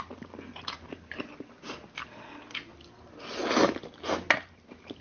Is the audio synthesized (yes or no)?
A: no